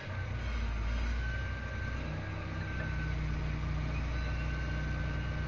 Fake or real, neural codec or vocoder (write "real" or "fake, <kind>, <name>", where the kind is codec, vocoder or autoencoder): real